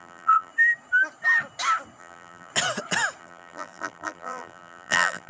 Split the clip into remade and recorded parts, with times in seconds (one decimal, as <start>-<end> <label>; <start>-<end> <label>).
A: 0.0-0.5 remade; 0.5-2.0 recorded; 2.0-2.5 remade; 2.5-3.2 recorded; 3.2-5.3 remade

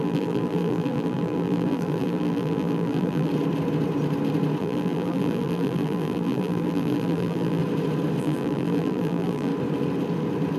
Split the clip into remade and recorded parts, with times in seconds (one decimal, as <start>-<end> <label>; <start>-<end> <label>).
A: 0.0-3.3 remade; 3.3-4.6 recorded; 4.6-7.6 remade; 7.6-8.2 recorded; 8.2-9.5 remade; 9.5-10.6 recorded

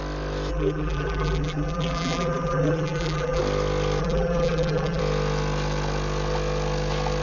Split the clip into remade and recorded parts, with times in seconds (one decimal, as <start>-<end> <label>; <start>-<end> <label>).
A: 0.0-0.5 recorded; 0.5-3.4 remade; 3.4-4.0 recorded; 4.0-5.0 remade; 5.0-7.2 recorded

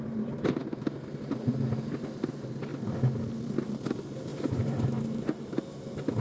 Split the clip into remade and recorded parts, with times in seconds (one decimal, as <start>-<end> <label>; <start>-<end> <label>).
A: 0.0-2.7 recorded; 2.7-3.6 remade; 3.6-4.3 recorded; 4.3-5.0 remade; 5.0-6.2 recorded

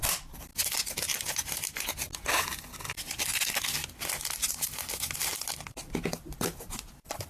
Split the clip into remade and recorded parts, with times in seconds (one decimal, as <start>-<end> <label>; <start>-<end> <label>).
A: 0.0-5.3 recorded; 5.3-7.3 remade

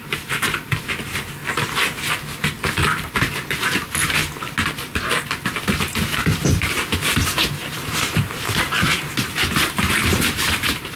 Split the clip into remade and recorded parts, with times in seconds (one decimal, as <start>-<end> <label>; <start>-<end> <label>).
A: 0.0-1.4 remade; 1.4-3.1 recorded; 3.1-4.2 remade; 4.2-5.8 recorded; 5.8-11.0 remade